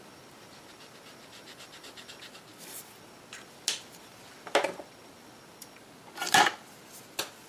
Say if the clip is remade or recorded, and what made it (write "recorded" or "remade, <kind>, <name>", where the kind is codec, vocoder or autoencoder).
recorded